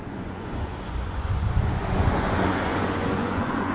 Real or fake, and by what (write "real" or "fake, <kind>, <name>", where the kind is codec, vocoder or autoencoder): fake, vocoder, Vocos